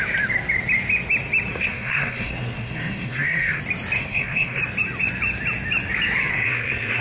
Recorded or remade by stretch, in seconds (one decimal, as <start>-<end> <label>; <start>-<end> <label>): 0.0-1.5 recorded; 1.5-3.6 remade; 3.6-4.0 recorded; 4.0-4.6 remade; 4.6-6.3 recorded; 6.3-7.0 remade